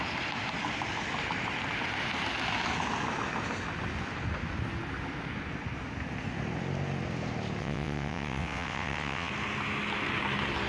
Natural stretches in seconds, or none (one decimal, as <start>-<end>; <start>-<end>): 0.0-7.6; 9.3-10.7